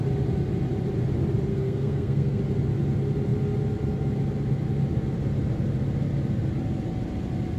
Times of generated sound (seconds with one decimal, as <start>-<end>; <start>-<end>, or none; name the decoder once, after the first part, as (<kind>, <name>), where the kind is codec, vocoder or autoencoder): 1.5-2.4 (codec, SNAC)